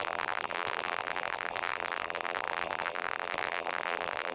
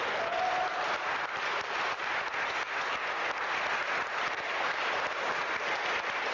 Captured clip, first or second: second